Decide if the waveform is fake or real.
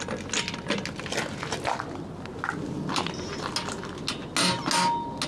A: real